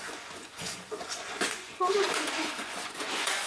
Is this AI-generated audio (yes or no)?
yes